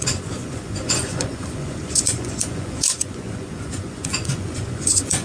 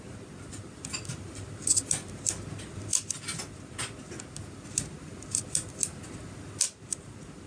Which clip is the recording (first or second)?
second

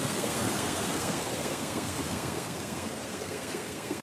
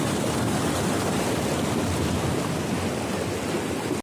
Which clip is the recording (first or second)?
second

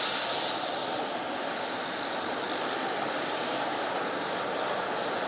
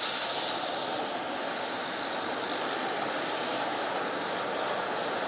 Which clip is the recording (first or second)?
second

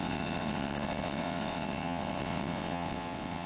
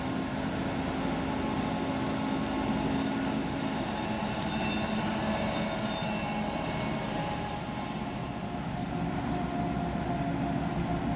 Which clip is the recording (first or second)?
second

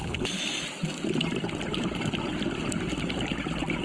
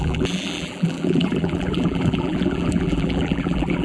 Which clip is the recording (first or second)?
first